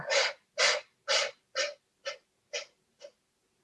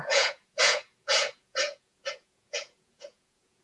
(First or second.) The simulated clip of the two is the second